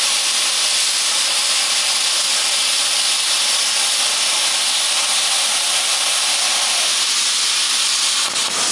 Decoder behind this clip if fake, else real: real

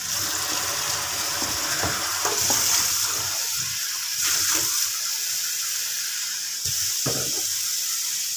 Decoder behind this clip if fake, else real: real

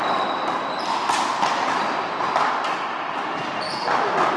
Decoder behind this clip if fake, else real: real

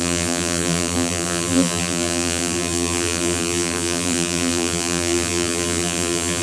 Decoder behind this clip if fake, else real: fake, vocoder, BigVGAN v2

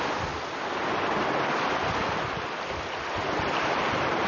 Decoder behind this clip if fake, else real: real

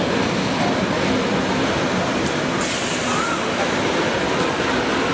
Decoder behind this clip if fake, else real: real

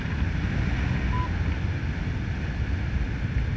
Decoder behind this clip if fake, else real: real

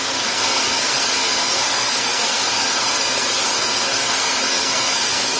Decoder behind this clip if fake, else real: fake, codec, SNAC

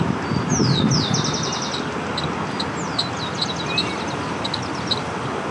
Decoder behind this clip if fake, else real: real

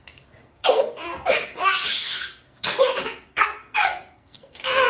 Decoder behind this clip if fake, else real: fake, codec, SNAC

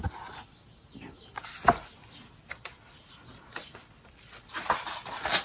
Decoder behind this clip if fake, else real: real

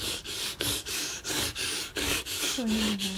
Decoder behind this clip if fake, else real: fake, codec, DAC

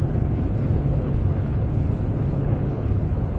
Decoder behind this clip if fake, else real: fake, codec, HILCodec